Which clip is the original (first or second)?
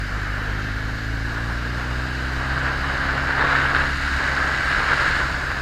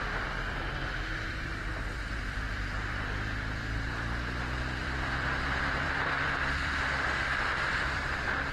first